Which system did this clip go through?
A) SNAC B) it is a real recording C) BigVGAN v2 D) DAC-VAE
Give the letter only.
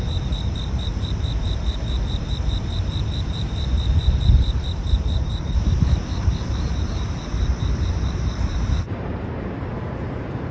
C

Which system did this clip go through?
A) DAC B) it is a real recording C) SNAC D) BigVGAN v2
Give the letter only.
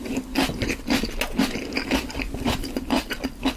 B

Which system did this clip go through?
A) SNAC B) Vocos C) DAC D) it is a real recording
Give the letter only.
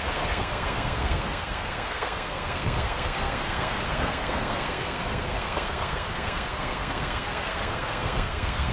A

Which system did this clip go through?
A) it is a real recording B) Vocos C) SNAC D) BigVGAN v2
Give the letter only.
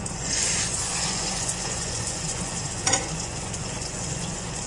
B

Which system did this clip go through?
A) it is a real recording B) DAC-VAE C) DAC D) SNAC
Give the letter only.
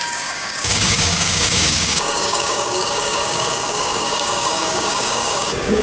C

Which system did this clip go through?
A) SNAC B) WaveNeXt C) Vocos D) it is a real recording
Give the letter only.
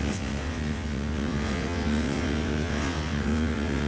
B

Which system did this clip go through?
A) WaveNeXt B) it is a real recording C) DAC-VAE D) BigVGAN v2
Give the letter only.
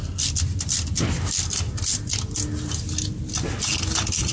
B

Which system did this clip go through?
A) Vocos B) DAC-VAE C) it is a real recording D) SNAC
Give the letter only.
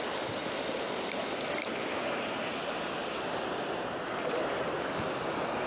C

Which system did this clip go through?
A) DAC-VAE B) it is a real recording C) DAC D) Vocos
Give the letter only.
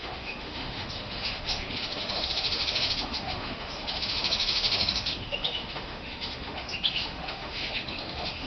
A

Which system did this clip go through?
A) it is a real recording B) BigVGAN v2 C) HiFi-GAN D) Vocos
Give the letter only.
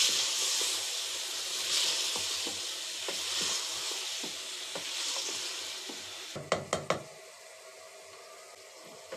A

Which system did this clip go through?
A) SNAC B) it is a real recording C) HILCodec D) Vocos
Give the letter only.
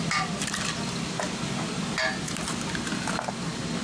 B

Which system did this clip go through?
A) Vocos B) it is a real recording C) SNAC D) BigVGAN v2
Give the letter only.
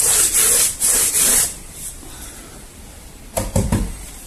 D